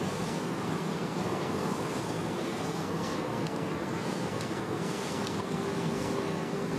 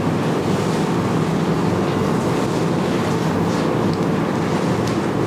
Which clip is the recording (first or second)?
second